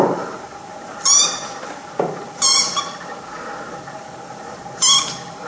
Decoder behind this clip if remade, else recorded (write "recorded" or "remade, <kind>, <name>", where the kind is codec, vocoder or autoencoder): recorded